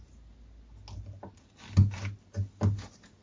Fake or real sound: real